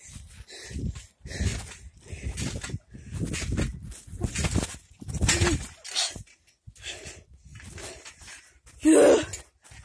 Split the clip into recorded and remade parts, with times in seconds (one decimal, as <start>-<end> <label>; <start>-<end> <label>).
0.0-9.8 recorded